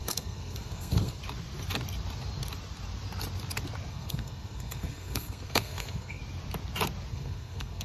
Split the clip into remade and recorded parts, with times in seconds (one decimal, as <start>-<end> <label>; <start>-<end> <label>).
0.0-1.2 remade; 1.2-3.9 recorded; 3.9-6.2 remade; 6.2-7.1 recorded; 7.1-7.8 remade